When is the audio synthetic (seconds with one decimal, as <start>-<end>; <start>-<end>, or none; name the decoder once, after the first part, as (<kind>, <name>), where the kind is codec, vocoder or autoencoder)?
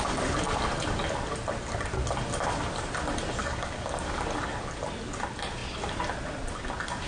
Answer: 3.4-4.2 (codec, DAC)